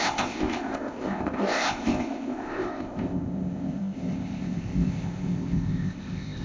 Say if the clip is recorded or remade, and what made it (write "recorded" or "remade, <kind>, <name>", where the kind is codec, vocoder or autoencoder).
remade, codec, ZipCodec